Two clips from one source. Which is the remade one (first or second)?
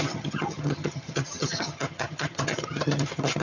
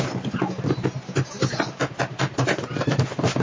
first